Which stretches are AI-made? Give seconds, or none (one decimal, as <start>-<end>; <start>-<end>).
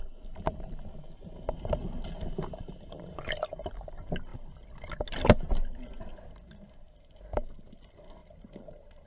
8.2-9.1